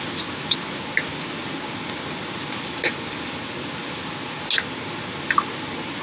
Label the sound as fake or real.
real